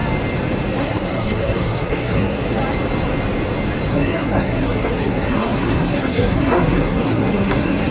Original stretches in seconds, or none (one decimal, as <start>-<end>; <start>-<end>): 0.0-0.8; 2.6-3.9